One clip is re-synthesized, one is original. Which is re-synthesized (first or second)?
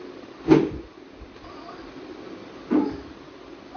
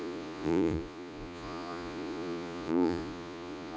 second